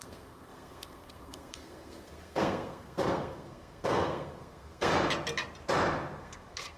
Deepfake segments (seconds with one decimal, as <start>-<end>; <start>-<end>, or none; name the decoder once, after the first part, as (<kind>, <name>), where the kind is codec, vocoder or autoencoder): 0.0-4.9 (codec, SNAC); 6.2-6.8